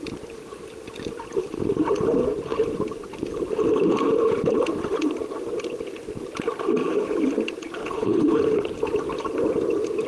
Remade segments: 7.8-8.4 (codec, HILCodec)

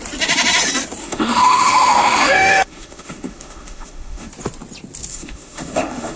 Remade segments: 1.0-4.3 (autoencoder, DAC-VAE); 5.1-6.2

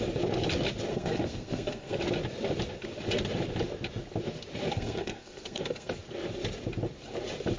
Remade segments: 0.9-2.0 (codec, SNAC); 4.7-5.9

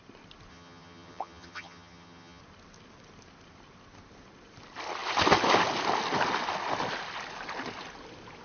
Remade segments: 0.5-2.4 (vocoder, HiFi-GAN)

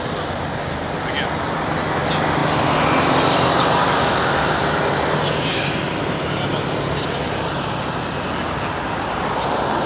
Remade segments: none